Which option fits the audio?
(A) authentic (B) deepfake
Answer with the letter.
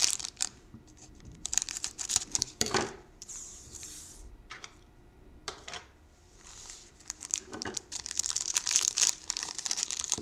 B